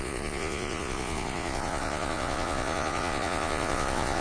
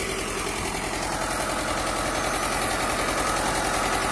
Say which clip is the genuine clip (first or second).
second